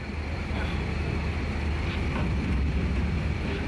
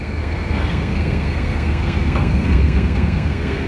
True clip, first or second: first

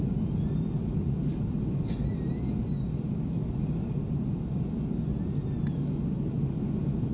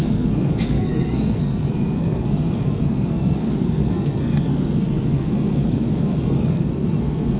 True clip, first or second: first